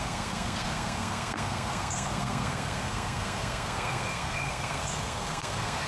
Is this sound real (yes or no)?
no